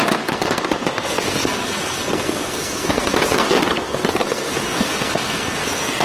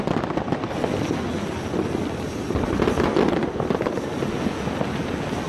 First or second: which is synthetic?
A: first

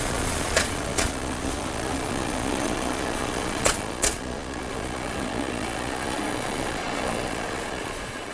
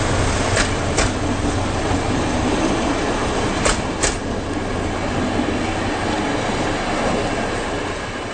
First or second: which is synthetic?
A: first